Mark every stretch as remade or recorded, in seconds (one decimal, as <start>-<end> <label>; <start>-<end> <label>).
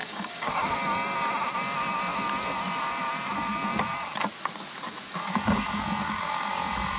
0.0-0.8 remade; 0.8-6.0 recorded; 6.0-6.5 remade; 6.5-7.0 recorded